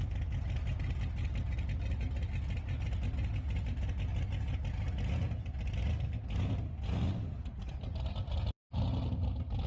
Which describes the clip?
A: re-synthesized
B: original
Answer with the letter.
B